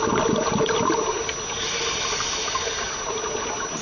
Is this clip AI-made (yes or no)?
no